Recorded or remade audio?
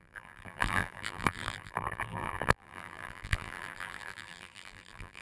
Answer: remade